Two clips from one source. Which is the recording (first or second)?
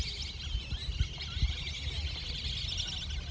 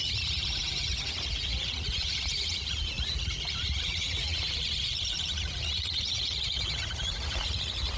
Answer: first